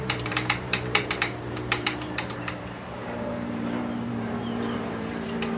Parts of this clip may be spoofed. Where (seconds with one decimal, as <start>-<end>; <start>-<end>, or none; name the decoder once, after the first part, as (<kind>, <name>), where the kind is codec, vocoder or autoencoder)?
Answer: 0.0-5.6 (vocoder, BigVGAN v2)